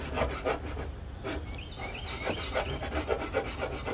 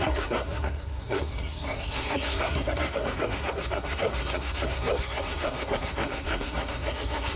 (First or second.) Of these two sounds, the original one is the first